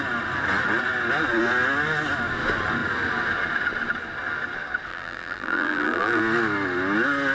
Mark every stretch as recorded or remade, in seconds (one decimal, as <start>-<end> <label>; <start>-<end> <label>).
0.0-4.9 recorded; 4.9-6.2 remade; 6.2-7.3 recorded

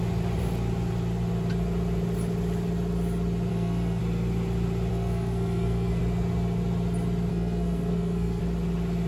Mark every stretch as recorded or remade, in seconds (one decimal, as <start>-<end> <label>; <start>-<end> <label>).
0.0-3.5 recorded; 3.5-4.0 remade; 4.0-4.9 recorded; 4.9-6.0 remade; 6.0-7.3 recorded; 7.3-8.4 remade; 8.4-9.1 recorded

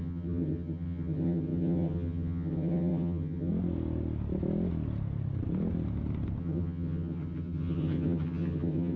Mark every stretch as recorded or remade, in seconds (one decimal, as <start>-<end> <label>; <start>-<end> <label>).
0.0-3.5 remade; 3.5-6.4 recorded; 6.4-9.0 remade

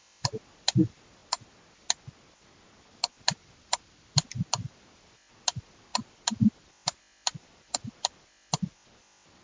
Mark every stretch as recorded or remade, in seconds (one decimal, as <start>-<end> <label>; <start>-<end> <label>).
0.0-1.2 remade; 1.2-3.1 recorded; 3.1-9.4 remade

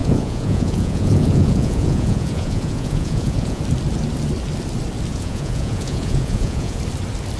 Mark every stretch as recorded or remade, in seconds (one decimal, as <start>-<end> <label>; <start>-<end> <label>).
0.0-3.6 remade; 3.6-5.1 recorded; 5.1-6.8 remade; 6.8-7.4 recorded

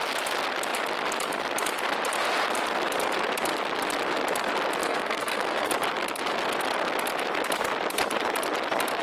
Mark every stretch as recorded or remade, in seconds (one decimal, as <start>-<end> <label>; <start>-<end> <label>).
0.0-4.8 recorded; 4.8-5.7 remade; 5.7-9.0 recorded

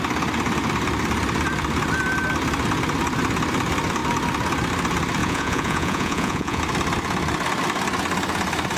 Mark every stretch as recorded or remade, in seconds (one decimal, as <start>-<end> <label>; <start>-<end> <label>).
0.0-5.2 recorded; 5.2-6.6 remade; 6.6-8.8 recorded